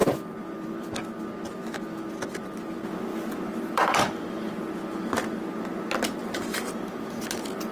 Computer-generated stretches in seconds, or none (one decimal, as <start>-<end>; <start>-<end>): 0.0-1.2; 3.1-4.5